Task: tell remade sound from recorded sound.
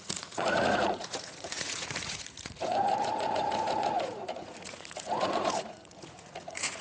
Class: remade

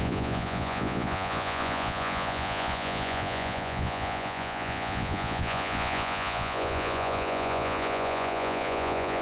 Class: remade